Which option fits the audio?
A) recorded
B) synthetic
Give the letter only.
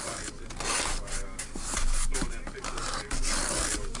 A